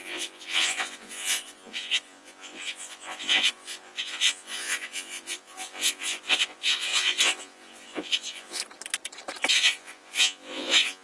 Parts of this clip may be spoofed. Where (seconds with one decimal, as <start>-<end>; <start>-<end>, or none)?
0.0-8.6; 9.5-11.0